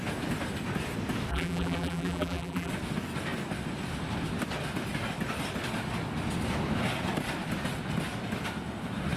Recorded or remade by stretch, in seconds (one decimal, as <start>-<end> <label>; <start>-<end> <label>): 0.0-1.3 recorded; 1.3-2.7 remade; 2.7-9.2 recorded